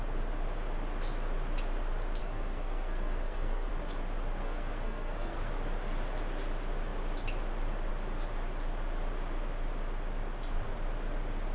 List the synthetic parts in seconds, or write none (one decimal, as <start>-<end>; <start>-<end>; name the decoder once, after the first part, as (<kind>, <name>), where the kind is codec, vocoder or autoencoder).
2.2-3.7 (codec, SNAC); 4.4-5.5

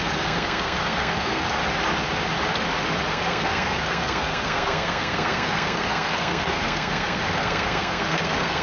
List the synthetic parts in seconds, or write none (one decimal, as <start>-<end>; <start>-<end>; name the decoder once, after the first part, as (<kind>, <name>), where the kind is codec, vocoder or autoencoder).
0.0-1.6 (codec, SNAC); 3.1-8.6

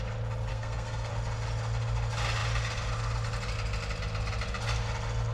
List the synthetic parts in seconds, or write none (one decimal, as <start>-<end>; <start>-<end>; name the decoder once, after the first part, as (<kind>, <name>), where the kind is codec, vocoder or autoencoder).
0.5-1.1 (codec, SNAC)

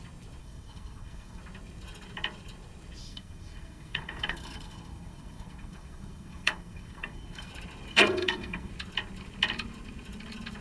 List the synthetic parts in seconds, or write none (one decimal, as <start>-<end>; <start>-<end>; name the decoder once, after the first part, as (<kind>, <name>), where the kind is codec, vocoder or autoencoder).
0.4-1.4 (codec, SNAC); 3.0-7.5; 7.9-8.7

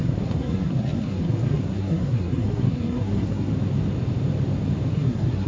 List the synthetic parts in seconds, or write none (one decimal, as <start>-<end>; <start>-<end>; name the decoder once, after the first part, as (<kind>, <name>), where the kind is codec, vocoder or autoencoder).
0.0-3.5 (codec, SNAC); 4.9-5.5